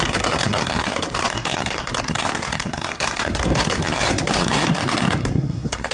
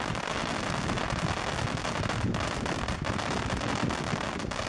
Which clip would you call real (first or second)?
second